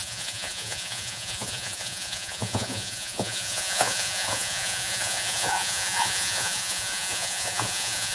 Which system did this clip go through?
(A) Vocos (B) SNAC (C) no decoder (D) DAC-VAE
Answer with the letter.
A